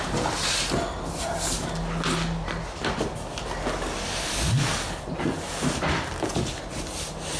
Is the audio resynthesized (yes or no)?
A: no